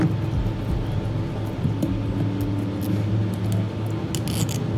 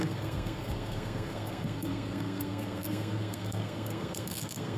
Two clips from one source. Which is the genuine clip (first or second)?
first